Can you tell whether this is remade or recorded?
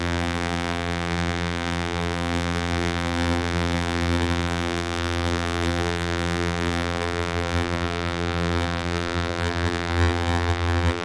remade